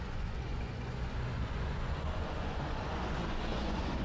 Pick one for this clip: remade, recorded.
remade